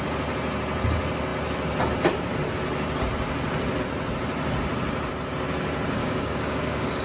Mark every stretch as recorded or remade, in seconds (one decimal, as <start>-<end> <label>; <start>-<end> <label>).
0.0-6.0 recorded; 6.0-7.0 remade